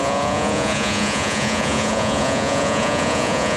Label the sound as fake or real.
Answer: fake